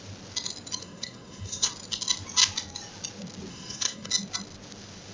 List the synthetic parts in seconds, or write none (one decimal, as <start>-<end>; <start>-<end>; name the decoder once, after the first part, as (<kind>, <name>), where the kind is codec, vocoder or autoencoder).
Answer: 0.8-1.7 (codec, SNAC); 3.5-4.1